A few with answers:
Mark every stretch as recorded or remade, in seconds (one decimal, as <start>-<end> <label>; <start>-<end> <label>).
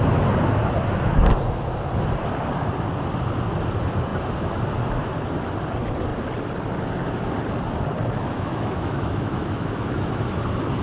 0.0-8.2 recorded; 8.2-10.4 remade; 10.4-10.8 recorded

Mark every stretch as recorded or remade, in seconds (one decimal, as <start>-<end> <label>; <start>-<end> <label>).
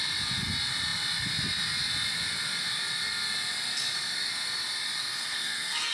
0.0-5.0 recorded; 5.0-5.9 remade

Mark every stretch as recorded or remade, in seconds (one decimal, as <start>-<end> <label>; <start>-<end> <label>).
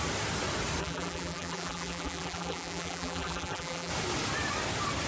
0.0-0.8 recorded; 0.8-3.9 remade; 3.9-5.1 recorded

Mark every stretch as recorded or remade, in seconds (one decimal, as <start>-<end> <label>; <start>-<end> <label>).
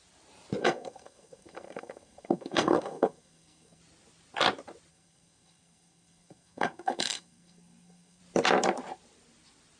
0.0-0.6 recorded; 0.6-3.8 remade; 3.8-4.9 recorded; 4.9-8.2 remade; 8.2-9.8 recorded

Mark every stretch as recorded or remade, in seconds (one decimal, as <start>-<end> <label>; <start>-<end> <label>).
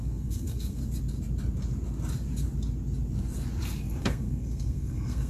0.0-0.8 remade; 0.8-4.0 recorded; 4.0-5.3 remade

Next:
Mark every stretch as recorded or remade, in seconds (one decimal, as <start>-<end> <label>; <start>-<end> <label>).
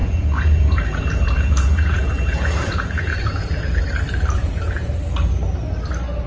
0.0-3.8 remade; 3.8-4.4 recorded; 4.4-4.9 remade; 4.9-6.3 recorded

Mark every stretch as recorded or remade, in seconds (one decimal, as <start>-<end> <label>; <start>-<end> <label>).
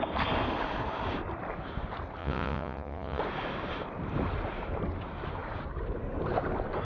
0.0-2.2 recorded; 2.2-3.2 remade; 3.2-6.8 recorded